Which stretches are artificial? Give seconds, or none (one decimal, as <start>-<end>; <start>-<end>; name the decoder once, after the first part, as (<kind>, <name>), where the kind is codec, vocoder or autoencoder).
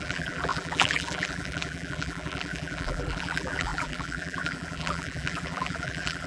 0.0-6.3 (vocoder, BigVGAN v2)